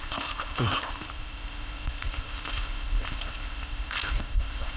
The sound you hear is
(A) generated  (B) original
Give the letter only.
A